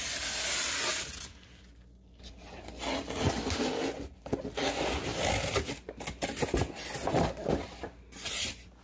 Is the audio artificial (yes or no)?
no